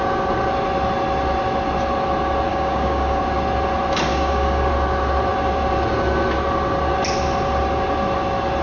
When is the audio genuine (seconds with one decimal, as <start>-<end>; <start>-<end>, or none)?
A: 0.0-2.5; 3.2-4.1; 4.7-8.6